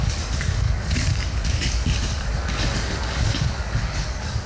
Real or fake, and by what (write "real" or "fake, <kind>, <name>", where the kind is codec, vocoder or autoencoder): fake, codec, DAC